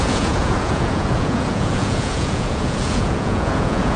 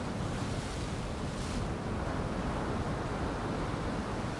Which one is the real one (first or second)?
second